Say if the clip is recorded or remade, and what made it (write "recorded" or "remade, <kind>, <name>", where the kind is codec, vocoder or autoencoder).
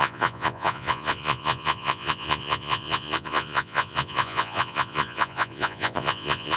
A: remade, vocoder, Vocos